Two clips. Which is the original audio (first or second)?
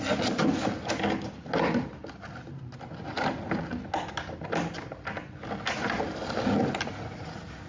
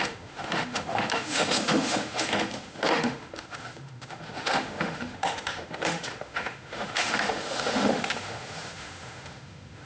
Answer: first